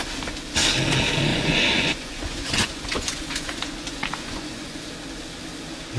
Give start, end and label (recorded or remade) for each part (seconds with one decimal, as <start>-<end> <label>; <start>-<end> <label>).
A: 0.0-1.3 recorded; 1.3-4.9 remade; 4.9-6.0 recorded